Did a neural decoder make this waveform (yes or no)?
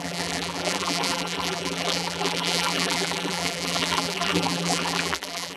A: yes